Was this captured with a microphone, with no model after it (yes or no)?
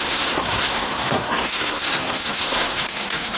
no